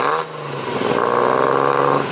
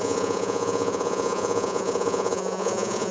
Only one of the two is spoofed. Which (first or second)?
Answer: second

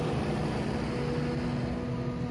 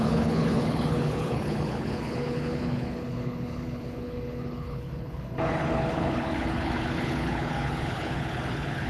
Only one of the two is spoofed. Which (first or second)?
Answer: second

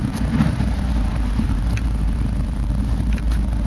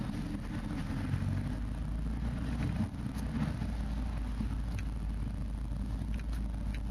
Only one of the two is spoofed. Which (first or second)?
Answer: first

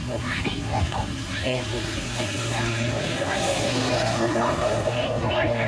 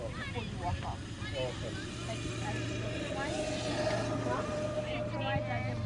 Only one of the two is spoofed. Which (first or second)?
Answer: first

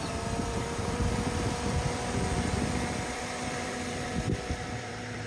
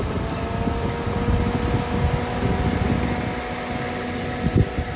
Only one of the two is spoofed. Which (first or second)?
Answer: first